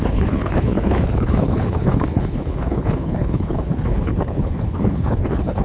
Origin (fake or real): fake